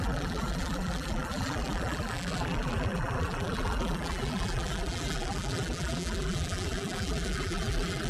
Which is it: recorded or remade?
remade